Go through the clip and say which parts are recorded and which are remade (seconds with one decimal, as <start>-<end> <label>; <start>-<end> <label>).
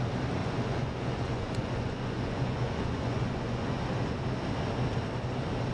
0.0-0.4 recorded; 0.4-3.8 remade; 3.8-5.7 recorded